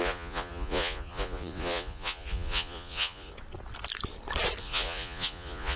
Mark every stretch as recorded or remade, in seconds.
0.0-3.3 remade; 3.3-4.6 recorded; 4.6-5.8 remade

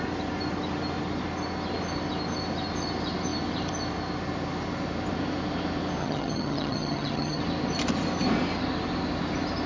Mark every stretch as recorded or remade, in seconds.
0.0-6.0 recorded; 6.0-7.4 remade; 7.4-9.7 recorded

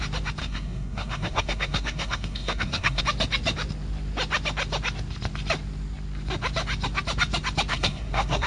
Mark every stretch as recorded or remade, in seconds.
0.0-0.4 recorded; 0.4-3.0 remade; 3.0-7.7 recorded; 7.7-8.5 remade

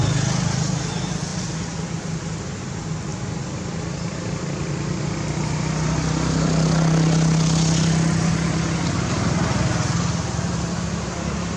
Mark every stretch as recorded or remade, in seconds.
0.0-11.6 recorded

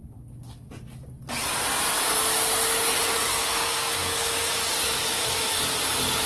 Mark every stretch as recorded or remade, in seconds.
0.0-3.4 recorded; 3.4-5.6 remade; 5.6-6.3 recorded

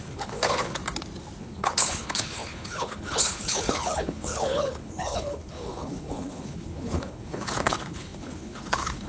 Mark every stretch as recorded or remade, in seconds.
0.0-0.8 remade; 0.8-1.4 recorded; 1.4-9.1 remade

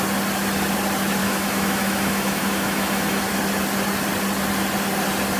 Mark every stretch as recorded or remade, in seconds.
0.0-1.2 recorded; 1.2-3.2 remade; 3.2-5.4 recorded